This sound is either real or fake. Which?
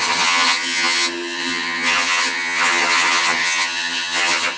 fake